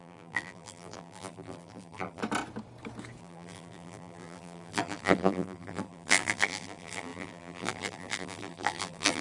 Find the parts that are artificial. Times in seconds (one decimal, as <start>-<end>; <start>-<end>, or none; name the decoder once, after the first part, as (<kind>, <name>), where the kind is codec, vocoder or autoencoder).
0.0-2.2 (vocoder, BigVGAN v2); 3.2-9.2